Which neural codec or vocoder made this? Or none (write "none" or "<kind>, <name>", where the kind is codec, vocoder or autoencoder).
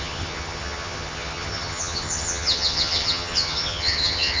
vocoder, HiFi-GAN